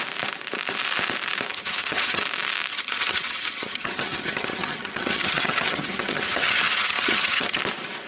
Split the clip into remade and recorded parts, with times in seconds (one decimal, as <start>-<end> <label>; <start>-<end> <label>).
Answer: 0.0-1.5 recorded; 1.5-2.2 remade; 2.2-2.7 recorded; 2.7-7.6 remade; 7.6-8.1 recorded